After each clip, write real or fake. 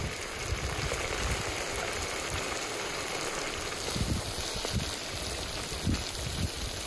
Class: real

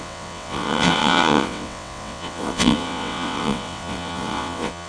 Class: fake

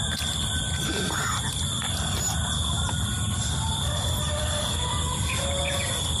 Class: real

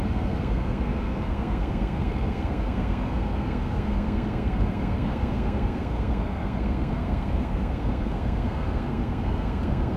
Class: fake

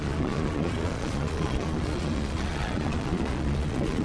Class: fake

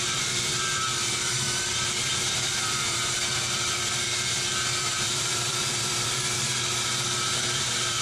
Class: fake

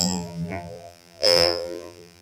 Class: fake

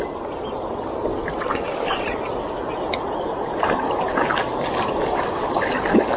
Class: real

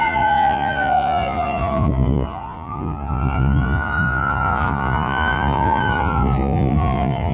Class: fake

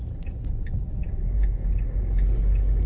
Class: real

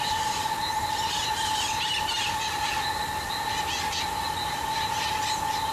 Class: real